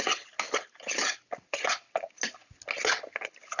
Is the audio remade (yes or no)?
no